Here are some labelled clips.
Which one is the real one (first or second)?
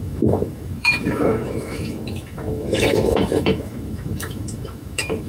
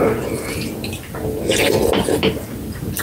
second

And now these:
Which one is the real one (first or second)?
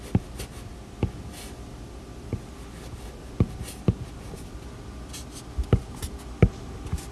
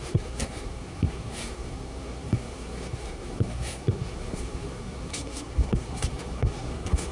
first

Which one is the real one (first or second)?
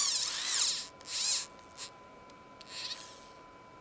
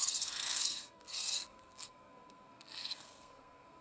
first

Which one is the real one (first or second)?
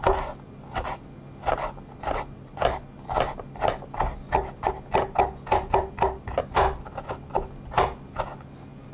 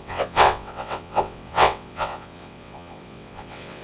first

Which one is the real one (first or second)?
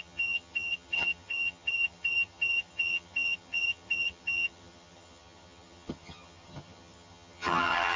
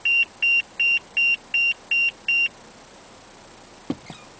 second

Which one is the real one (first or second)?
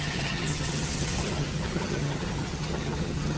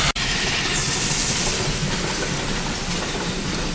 second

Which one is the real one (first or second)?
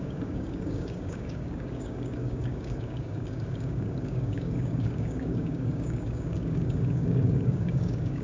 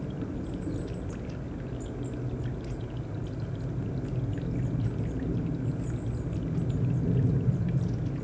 second